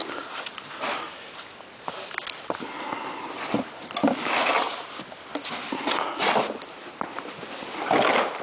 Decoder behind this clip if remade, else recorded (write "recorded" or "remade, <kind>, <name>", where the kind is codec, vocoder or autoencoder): recorded